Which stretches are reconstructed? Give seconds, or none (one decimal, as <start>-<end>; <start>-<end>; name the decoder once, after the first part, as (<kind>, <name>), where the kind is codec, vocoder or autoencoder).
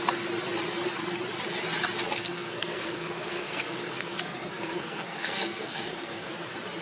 2.2-6.3 (codec, SNAC)